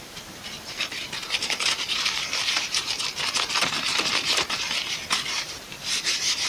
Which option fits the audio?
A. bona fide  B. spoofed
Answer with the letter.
B